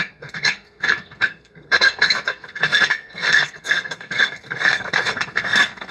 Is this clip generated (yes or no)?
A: yes